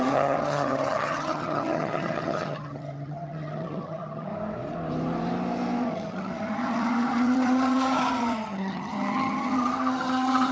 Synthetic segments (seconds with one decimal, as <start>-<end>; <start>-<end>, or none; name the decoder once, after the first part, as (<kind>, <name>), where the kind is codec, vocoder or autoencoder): 0.0-4.3 (vocoder, HiFi-GAN); 5.8-10.5